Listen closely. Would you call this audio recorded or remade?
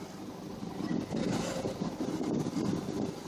recorded